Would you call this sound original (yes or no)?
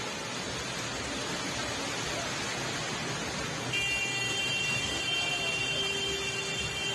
yes